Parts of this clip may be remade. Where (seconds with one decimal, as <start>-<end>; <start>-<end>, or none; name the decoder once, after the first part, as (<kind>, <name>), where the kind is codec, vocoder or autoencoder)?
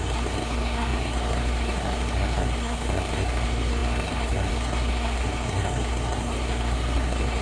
0.0-7.4 (codec, SNAC)